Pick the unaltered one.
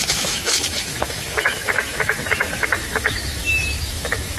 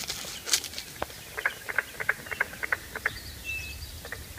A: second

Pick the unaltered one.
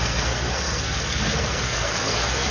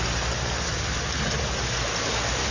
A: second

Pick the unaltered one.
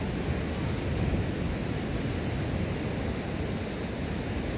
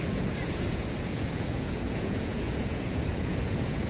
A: first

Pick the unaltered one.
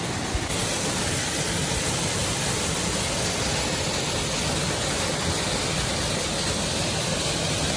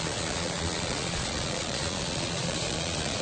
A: first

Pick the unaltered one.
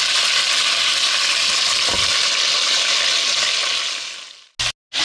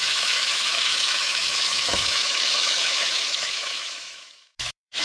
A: first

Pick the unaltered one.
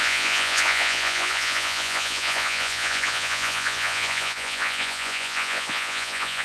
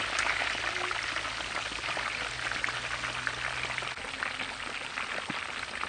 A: second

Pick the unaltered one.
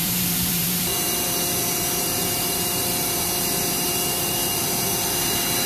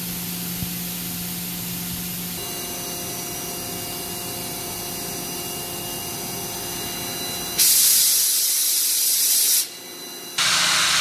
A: second